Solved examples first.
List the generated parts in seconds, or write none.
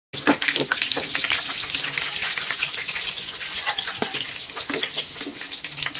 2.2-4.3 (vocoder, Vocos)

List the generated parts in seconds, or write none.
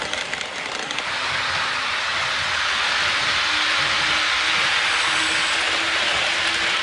none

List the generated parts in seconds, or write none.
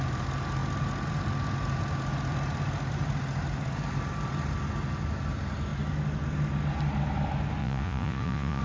7.6-8.6 (vocoder, Vocos)